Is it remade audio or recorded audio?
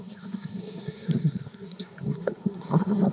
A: remade